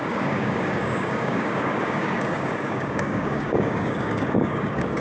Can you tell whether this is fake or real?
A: fake